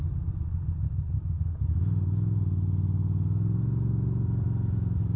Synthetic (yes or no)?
no